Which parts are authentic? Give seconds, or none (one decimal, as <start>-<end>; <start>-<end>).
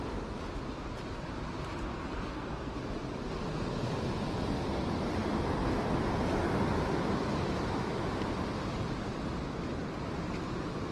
0.0-1.9; 2.8-10.9